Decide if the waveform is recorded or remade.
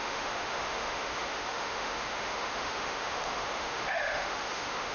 remade